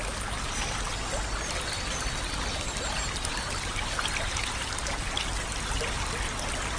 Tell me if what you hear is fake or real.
real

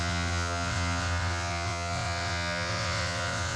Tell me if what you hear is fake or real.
fake